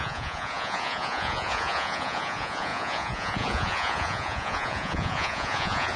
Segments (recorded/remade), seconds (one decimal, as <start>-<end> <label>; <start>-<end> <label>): 0.0-6.0 remade